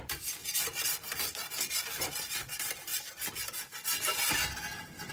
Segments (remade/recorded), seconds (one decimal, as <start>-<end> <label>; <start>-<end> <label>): 0.0-0.4 remade; 0.4-1.8 recorded; 1.8-5.1 remade